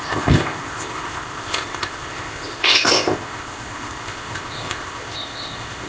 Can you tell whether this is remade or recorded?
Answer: remade